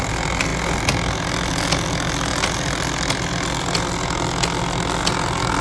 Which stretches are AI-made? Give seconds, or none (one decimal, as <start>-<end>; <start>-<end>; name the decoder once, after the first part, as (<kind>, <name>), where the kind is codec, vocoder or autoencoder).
none